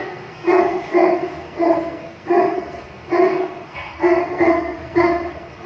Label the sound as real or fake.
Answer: fake